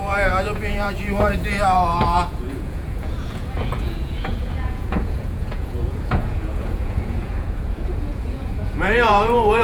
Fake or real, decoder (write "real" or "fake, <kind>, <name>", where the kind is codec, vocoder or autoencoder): fake, vocoder, Vocos